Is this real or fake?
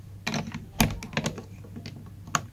real